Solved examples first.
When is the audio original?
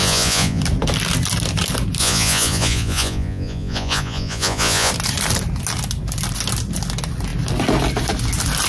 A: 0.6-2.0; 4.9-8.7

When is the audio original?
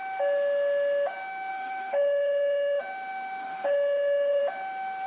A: 0.0-1.5; 2.8-3.4; 4.4-5.1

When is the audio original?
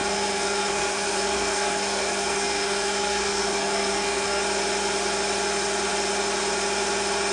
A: 4.4-7.3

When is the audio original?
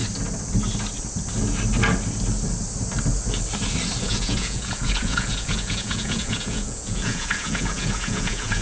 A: 0.0-4.0